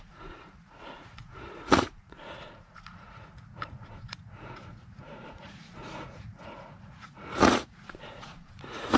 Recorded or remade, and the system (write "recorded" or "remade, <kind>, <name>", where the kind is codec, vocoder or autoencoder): remade, vocoder, Vocos